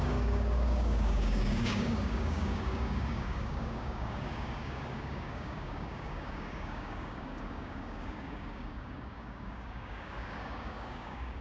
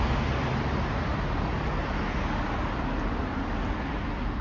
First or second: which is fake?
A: first